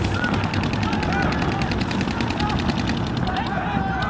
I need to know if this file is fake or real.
real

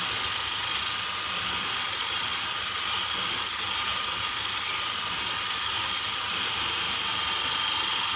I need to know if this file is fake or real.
fake